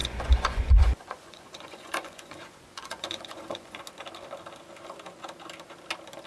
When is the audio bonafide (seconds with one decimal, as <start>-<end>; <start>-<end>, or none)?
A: 3.8-6.3